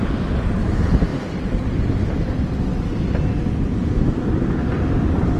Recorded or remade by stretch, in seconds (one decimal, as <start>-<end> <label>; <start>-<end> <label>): 0.0-2.7 recorded; 2.7-3.7 remade; 3.7-5.4 recorded